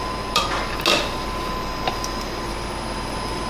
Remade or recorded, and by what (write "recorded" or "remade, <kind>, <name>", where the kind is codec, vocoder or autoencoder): recorded